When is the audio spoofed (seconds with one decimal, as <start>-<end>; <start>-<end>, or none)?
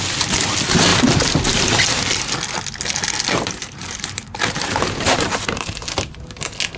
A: 0.9-1.5; 3.6-5.7